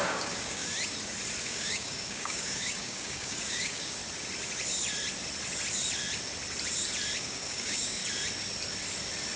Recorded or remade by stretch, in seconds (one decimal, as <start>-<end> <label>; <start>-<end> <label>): 0.0-0.6 remade; 0.6-1.4 recorded; 1.4-4.0 remade; 4.0-7.2 recorded; 7.2-8.0 remade; 8.0-9.4 recorded